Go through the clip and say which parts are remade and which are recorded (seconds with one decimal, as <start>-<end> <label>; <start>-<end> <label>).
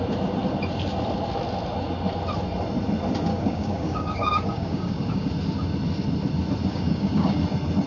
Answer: 0.0-3.3 recorded; 3.3-5.3 remade; 5.3-6.7 recorded; 6.7-7.4 remade; 7.4-7.9 recorded